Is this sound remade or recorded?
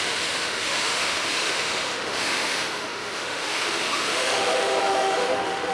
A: remade